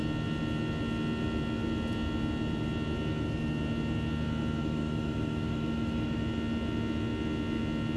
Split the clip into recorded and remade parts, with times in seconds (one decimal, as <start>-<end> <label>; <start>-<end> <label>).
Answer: 0.0-4.6 recorded; 4.6-6.2 remade; 6.2-8.0 recorded